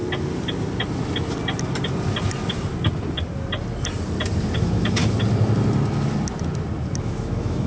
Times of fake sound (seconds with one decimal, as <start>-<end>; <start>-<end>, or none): 4.6-5.0; 7.0-7.7